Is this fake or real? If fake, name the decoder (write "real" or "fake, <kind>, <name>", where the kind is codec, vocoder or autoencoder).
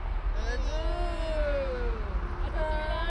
real